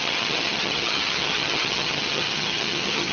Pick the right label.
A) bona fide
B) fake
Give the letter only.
B